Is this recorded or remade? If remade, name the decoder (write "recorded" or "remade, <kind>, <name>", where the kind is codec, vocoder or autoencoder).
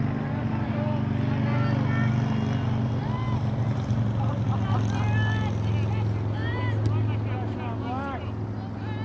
recorded